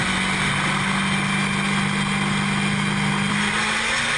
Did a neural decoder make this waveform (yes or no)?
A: no